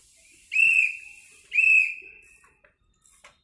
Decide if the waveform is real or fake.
real